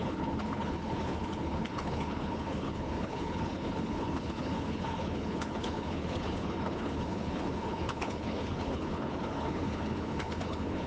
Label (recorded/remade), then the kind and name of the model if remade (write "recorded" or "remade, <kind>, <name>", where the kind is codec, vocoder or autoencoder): remade, codec, HILCodec